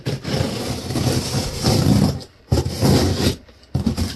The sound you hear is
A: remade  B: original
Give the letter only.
B